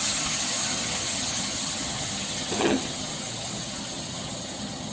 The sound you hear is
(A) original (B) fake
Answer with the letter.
B